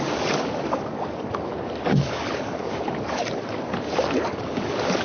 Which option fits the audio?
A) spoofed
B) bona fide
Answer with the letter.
A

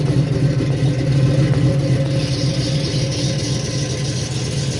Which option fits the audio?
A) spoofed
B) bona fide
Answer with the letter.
B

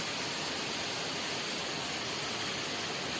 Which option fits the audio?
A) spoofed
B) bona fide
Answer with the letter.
B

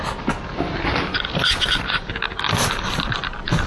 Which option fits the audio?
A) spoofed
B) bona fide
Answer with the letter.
B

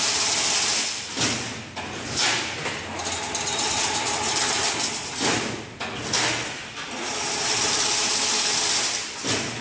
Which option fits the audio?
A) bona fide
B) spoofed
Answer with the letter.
A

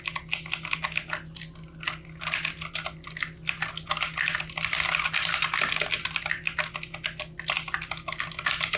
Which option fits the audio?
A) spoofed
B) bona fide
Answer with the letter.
B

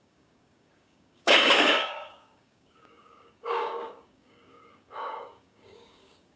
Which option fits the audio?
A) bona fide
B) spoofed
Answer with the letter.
B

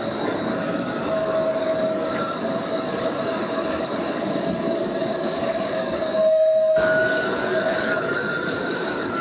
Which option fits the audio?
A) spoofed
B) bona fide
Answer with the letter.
A